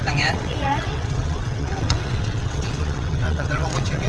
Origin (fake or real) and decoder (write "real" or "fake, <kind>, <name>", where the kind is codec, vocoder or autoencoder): fake, vocoder, WaveNeXt